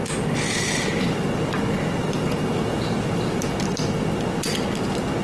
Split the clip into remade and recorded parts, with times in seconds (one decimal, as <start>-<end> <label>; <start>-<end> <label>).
0.0-5.2 recorded